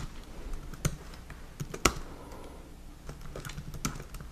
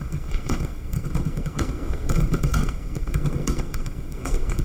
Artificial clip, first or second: second